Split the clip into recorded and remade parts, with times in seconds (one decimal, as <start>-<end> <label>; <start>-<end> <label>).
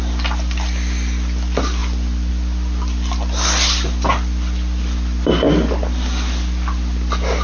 0.0-7.4 recorded